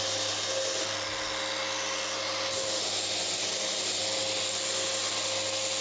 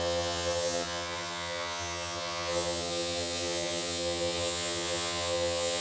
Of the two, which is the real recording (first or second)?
first